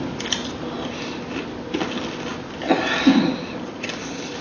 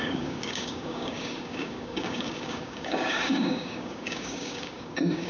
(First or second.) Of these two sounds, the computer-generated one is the second